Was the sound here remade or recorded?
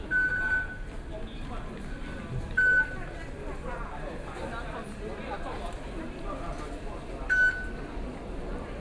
recorded